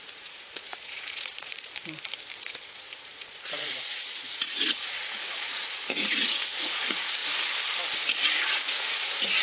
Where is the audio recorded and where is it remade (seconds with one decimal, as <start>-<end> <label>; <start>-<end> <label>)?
0.0-1.7 remade; 1.7-2.4 recorded; 2.4-7.2 remade; 7.2-8.5 recorded; 8.5-9.4 remade